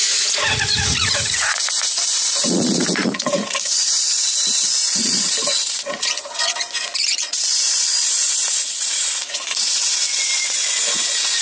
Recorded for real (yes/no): no